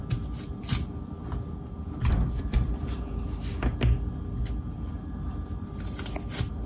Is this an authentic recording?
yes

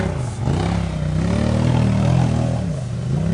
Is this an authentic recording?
yes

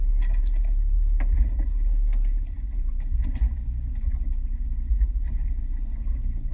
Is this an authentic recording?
yes